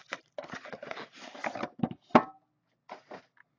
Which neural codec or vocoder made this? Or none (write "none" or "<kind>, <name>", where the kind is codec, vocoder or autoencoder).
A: none